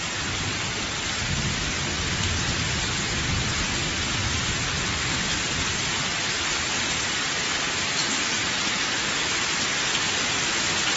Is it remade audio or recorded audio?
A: recorded